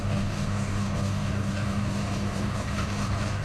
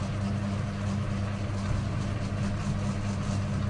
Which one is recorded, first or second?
second